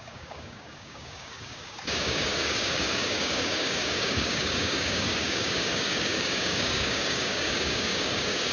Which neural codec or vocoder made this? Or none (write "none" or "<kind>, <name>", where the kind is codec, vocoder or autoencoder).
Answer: codec, DAC